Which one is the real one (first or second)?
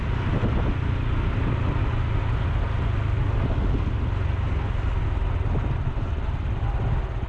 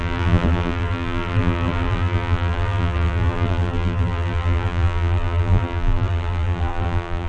first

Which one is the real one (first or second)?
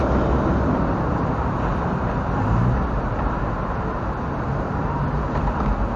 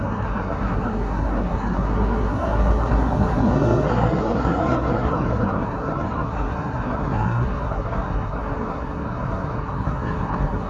first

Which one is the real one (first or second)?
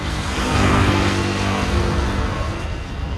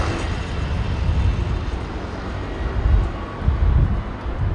second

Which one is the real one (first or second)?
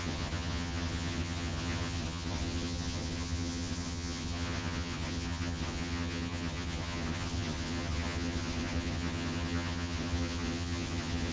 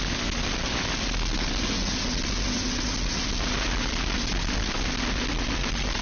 second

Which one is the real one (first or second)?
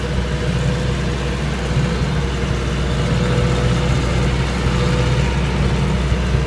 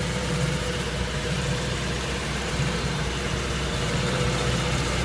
first